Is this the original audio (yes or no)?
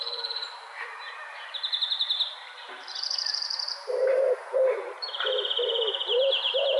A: no